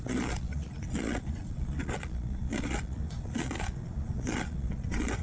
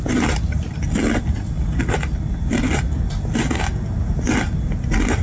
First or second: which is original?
second